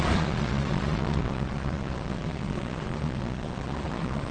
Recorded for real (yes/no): no